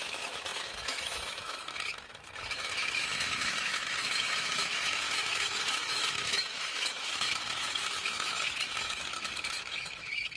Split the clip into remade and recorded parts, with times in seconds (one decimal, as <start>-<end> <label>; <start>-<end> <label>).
0.0-10.4 remade